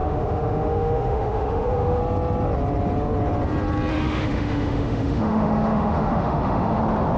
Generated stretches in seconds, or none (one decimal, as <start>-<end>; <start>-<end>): 0.0-2.0; 3.9-6.8

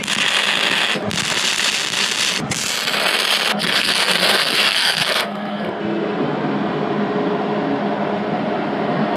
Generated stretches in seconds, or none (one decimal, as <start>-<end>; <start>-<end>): 3.5-5.8

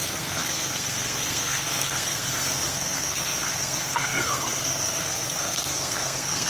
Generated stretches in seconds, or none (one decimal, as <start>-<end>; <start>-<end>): 0.0-6.5

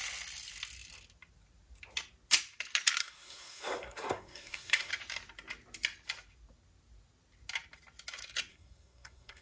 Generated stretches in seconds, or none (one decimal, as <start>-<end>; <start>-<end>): 3.0-4.9; 8.5-9.4

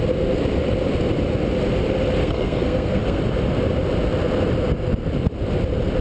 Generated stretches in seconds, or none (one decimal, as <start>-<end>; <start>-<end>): 2.2-3.2

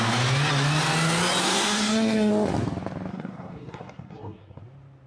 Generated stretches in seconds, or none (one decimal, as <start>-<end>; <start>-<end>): 1.4-2.3; 3.1-4.6

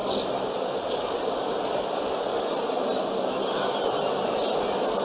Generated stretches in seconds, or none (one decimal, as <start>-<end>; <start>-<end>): none

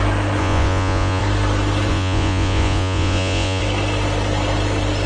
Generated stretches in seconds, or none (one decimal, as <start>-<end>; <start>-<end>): 0.4-1.2; 1.9-3.6